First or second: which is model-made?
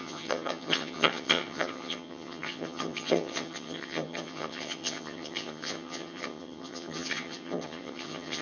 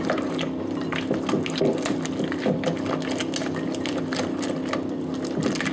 first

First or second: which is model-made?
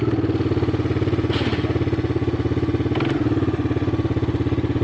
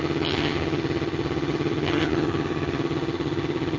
second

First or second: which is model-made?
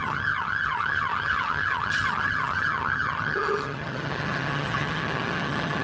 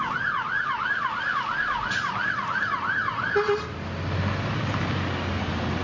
first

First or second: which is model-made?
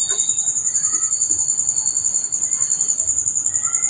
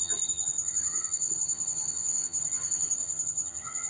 second